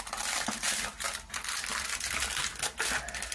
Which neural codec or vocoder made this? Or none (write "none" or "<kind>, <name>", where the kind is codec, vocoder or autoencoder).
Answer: none